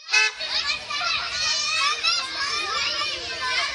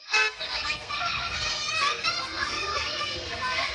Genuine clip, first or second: first